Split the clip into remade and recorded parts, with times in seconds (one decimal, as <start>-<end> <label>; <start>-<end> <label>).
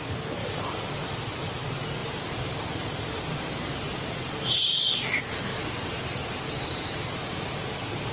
0.0-0.4 recorded; 0.4-1.6 remade; 1.6-2.0 recorded; 2.0-4.9 remade; 4.9-8.1 recorded